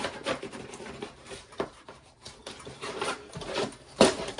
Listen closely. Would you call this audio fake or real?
fake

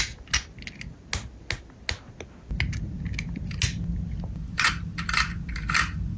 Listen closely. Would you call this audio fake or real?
real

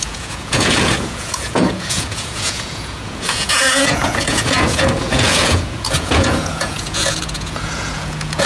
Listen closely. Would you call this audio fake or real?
fake